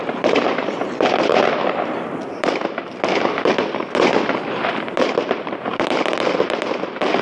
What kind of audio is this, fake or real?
fake